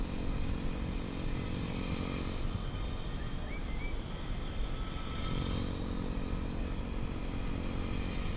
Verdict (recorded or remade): recorded